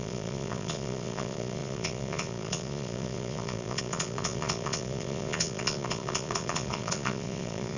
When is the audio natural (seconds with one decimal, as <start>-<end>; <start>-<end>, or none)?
none